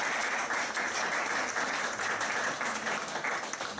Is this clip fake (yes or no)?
no